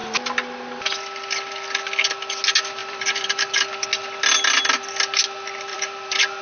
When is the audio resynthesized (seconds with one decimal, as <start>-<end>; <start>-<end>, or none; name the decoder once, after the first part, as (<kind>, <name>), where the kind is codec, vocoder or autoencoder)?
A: 2.8-3.5 (vocoder, BigVGAN v2); 5.7-6.4